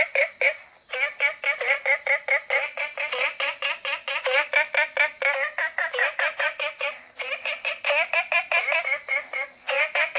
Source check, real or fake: real